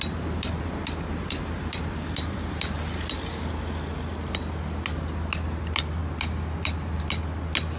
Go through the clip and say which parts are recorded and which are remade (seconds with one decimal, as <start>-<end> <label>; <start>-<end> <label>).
0.0-7.8 recorded